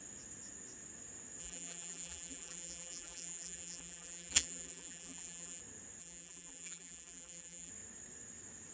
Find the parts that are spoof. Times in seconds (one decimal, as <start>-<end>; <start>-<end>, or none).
1.4-5.6; 6.0-7.7